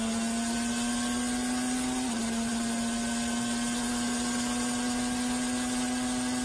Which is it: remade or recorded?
recorded